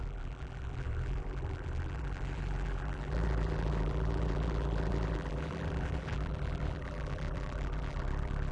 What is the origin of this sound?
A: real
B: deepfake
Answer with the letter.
B